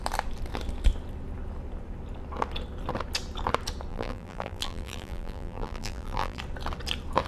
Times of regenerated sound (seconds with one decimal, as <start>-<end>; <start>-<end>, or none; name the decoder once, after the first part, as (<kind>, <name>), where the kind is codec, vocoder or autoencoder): 3.9-6.4 (vocoder, BigVGAN v2)